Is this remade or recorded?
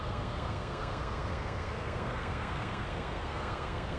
remade